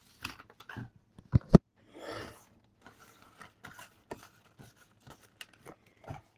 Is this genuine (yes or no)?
yes